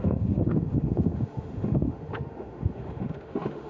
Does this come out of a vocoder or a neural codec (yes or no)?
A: yes